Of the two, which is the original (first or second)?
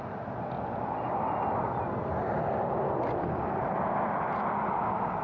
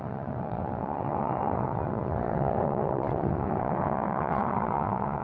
first